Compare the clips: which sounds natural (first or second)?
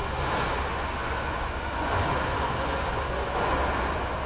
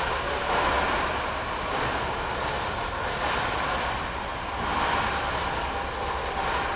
second